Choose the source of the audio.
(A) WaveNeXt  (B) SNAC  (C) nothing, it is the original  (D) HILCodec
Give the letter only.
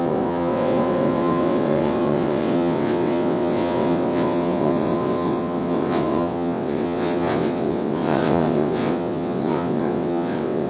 A